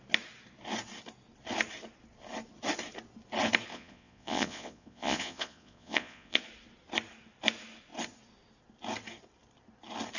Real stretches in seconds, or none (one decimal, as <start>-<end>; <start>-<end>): 0.0-3.7; 6.4-10.2